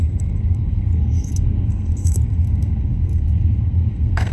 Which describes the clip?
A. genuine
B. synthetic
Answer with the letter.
B